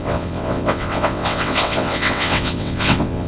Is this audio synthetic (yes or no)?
yes